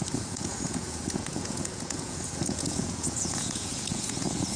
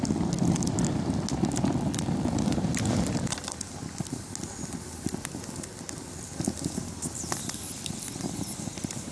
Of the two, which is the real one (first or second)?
second